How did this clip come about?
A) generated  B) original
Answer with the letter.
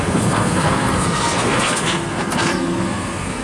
A